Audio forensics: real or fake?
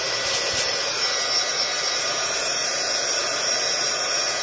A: fake